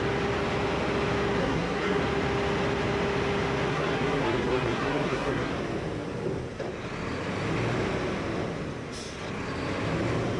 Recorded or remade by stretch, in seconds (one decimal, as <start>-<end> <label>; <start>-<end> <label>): 0.0-1.4 recorded; 1.4-2.0 remade; 2.0-3.7 recorded; 3.7-5.5 remade; 5.5-10.4 recorded